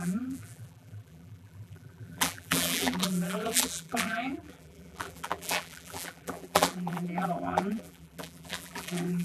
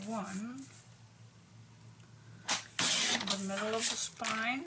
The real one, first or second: second